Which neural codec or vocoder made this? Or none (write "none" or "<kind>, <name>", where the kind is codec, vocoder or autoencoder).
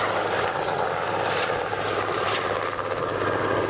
none